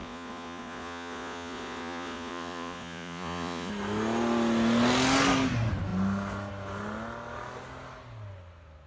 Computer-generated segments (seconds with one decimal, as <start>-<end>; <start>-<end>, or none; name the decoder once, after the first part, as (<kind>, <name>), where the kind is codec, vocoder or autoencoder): 0.0-3.7 (vocoder, Vocos)